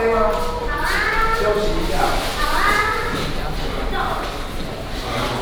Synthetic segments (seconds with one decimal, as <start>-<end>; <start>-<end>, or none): 0.6-1.9